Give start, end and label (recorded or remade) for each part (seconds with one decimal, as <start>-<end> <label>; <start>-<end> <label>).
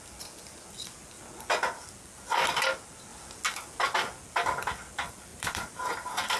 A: 0.0-5.3 recorded; 5.3-6.4 remade